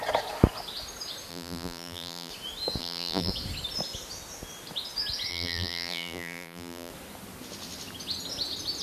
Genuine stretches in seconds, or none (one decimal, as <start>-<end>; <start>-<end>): 0.0-1.3; 2.3-2.8; 3.3-5.3; 6.9-8.8